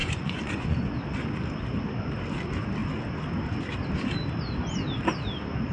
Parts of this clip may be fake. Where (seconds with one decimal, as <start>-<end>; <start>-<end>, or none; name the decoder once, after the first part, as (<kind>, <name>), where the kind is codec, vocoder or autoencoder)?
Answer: 0.0-0.9 (vocoder, Vocos)